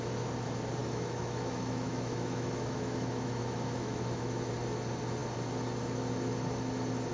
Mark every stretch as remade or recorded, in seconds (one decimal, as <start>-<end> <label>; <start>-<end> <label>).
0.0-0.8 recorded; 0.8-4.5 remade; 4.5-7.1 recorded